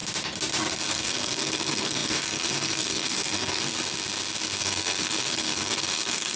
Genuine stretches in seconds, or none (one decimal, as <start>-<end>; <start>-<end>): 0.0-0.9; 3.7-4.6